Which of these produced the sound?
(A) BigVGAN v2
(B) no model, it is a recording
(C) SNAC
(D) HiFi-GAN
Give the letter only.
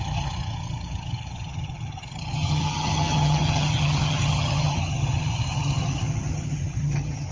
D